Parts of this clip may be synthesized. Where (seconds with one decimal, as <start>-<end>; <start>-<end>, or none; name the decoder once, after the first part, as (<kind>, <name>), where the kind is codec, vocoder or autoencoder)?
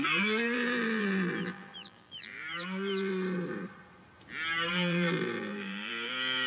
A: 0.0-3.1 (vocoder, BigVGAN v2); 4.7-6.5